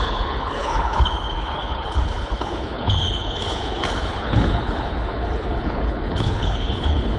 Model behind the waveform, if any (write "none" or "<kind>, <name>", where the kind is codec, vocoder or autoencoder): codec, HILCodec